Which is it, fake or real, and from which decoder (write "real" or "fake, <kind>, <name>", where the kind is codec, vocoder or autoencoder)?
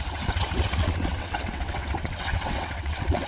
fake, vocoder, WaveNeXt